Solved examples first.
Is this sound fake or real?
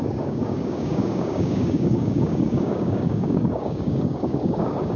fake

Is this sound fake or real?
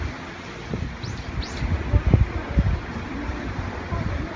fake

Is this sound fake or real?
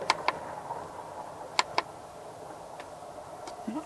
real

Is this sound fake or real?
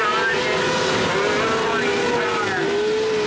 real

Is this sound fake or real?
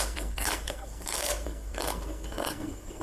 fake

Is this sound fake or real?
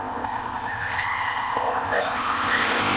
fake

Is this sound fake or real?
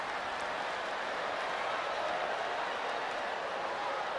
real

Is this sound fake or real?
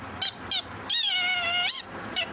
real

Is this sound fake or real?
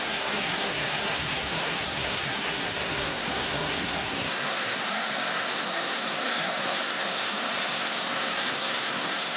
fake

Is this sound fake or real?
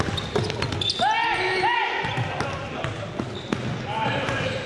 real